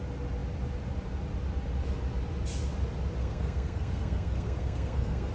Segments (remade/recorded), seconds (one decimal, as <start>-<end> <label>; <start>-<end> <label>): 0.0-3.2 recorded; 3.2-5.3 remade